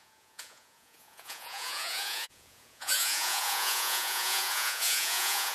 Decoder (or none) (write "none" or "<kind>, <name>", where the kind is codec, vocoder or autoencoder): vocoder, Vocos